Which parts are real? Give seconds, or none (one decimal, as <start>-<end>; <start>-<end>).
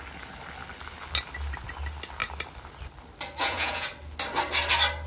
0.0-3.4; 3.9-5.1